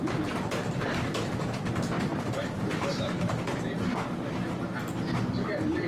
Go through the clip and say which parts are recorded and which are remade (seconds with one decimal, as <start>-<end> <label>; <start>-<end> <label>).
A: 0.0-2.1 recorded; 2.1-4.6 remade; 4.6-5.9 recorded